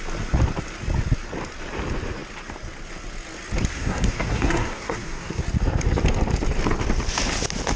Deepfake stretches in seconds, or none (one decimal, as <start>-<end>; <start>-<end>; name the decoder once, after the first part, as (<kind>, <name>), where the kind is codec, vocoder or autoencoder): 3.7-5.4 (codec, SNAC)